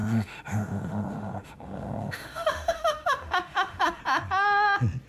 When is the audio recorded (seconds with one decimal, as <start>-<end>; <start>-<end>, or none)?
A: 4.0-5.1